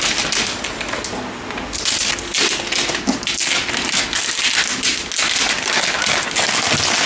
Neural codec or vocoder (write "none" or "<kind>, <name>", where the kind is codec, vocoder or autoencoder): none